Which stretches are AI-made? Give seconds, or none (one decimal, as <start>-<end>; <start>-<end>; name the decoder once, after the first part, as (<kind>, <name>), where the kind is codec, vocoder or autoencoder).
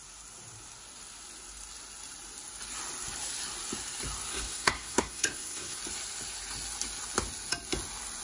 4.3-5.8 (codec, SNAC)